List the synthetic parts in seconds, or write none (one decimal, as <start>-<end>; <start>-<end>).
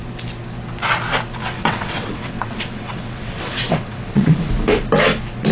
1.4-4.4